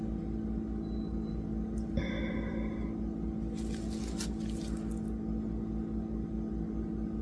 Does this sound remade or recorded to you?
recorded